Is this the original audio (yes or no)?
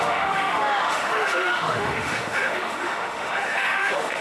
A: no